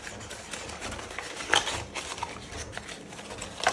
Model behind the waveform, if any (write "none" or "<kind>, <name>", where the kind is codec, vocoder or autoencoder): none